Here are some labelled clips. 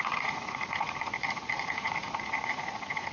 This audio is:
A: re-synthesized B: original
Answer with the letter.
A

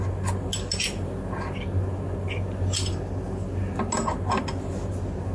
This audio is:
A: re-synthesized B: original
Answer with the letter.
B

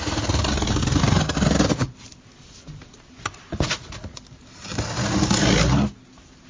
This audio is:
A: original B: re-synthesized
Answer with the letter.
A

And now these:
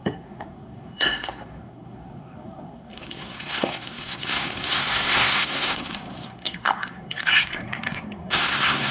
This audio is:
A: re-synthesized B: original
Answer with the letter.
A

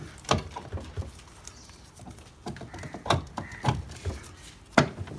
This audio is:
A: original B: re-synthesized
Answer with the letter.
A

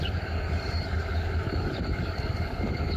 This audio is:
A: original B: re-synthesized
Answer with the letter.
B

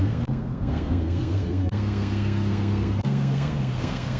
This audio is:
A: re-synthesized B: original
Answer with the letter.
A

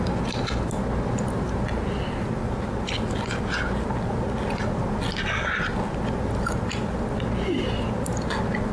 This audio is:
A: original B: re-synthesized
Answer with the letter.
A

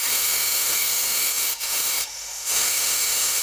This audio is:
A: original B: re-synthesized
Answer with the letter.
B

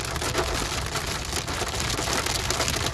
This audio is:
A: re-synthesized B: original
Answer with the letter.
B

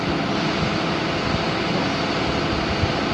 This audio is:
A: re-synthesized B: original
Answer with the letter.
B